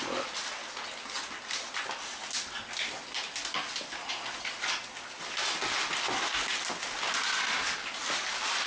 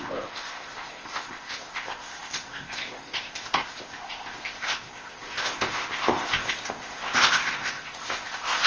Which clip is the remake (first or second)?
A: second